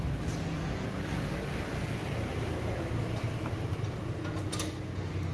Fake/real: real